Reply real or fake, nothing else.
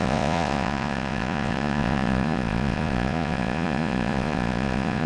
fake